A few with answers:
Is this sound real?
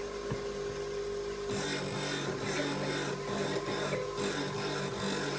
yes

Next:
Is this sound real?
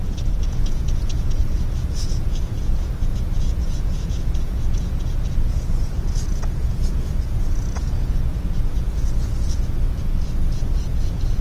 no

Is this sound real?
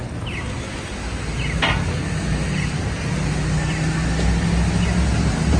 yes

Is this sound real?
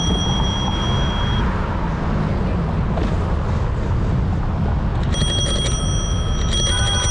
yes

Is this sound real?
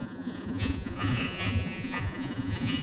no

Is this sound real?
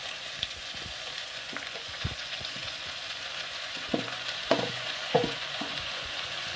no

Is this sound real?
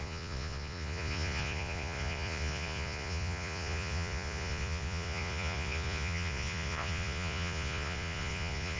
no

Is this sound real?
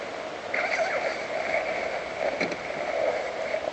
yes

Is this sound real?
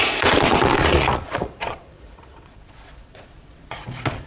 no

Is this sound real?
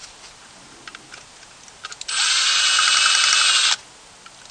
yes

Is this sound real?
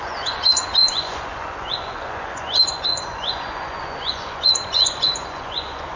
no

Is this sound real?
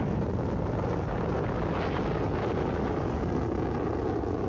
yes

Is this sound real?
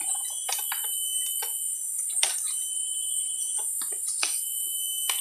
yes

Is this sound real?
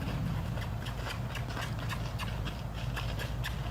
yes